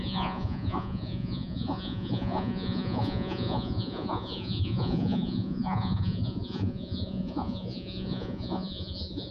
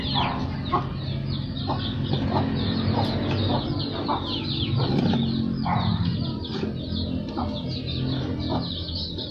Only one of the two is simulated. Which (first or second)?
first